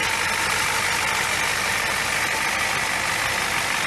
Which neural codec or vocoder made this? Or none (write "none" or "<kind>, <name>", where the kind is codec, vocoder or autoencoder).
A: none